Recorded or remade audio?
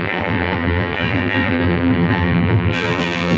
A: remade